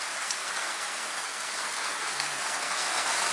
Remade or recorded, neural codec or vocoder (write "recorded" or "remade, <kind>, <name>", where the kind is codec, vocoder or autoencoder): remade, codec, SNAC